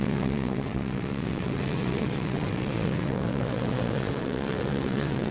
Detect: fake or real fake